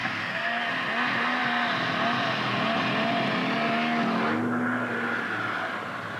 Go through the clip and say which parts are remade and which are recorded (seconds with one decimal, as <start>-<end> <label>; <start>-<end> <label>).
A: 0.0-0.6 remade; 0.6-6.2 recorded